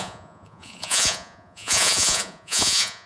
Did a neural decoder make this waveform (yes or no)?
yes